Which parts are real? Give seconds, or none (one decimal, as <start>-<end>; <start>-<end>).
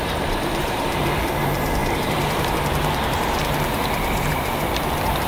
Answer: none